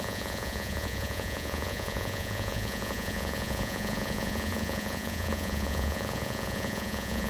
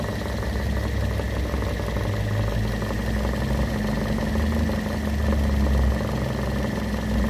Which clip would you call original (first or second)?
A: second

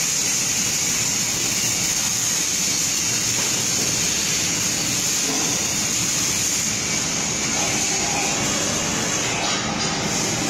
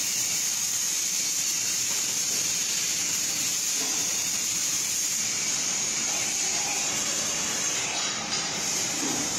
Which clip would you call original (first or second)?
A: first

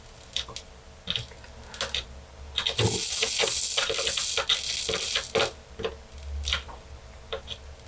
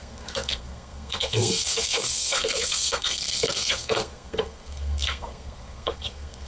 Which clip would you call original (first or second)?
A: first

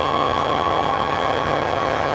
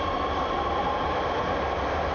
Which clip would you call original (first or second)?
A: second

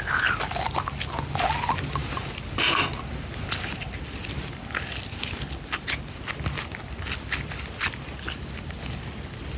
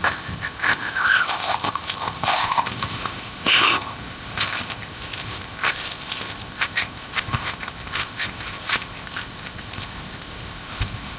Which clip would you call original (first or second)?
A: first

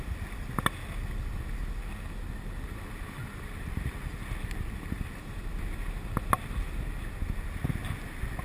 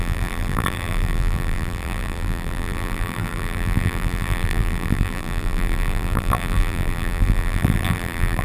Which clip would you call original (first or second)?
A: first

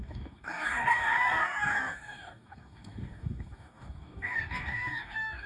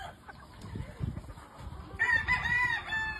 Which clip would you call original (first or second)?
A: second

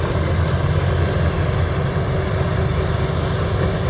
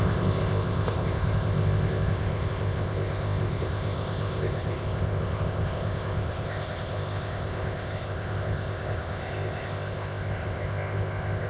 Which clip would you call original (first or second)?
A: first